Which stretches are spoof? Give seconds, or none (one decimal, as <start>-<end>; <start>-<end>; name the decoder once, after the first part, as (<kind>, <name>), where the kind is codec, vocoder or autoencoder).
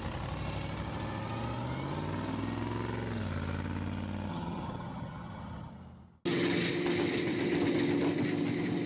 4.3-5.7 (vocoder, HiFi-GAN)